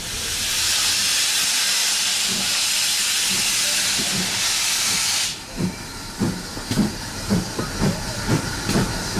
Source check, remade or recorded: recorded